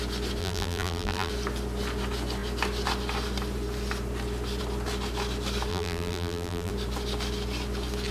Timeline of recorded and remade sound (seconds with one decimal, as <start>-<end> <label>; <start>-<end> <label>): 0.0-0.4 recorded; 0.4-1.3 remade; 1.3-5.7 recorded; 5.7-6.7 remade; 6.7-8.1 recorded